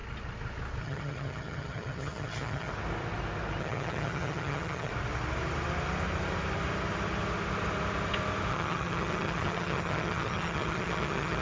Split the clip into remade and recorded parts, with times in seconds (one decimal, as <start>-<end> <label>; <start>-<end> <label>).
0.0-0.8 recorded; 0.8-2.7 remade; 2.7-3.6 recorded; 3.6-4.9 remade; 4.9-8.5 recorded; 8.5-11.4 remade